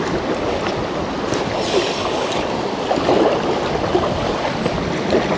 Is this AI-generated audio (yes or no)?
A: no